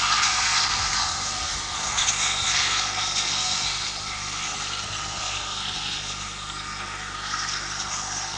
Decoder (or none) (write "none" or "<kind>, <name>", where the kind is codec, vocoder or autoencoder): codec, SNAC